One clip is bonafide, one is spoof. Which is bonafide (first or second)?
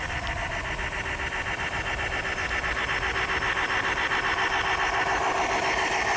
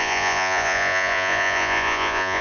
first